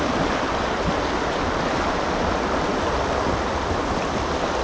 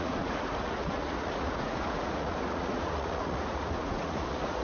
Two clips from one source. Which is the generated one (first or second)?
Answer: second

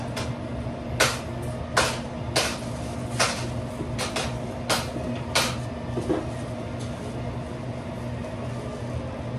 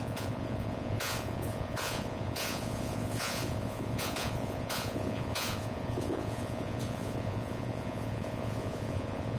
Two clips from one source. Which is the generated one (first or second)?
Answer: second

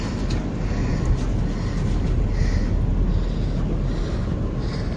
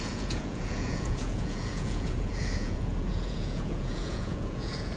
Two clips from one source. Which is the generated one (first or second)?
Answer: second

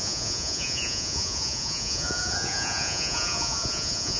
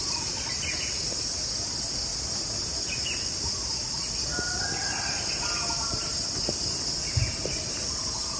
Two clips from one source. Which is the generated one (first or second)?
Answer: first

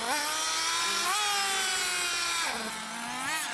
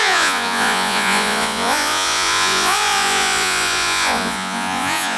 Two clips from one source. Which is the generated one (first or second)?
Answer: second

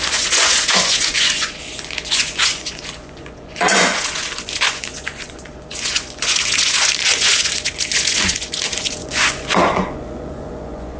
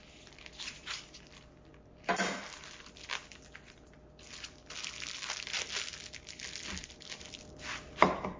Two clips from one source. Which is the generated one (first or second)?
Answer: first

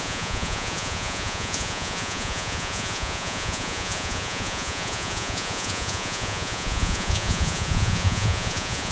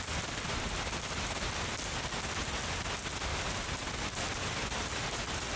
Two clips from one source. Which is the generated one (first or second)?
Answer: first